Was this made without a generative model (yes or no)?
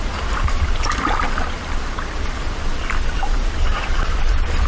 yes